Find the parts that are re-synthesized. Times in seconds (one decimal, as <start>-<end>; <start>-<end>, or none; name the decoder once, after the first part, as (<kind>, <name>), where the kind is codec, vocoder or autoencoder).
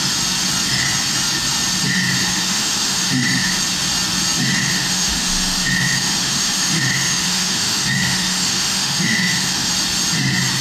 2.2-3.6 (autoencoder, DAC-VAE); 4.6-9.7